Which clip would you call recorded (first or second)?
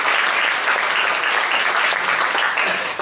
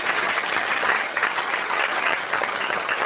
first